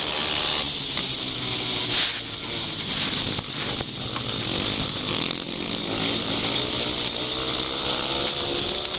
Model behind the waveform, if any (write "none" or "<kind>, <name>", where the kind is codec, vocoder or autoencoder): none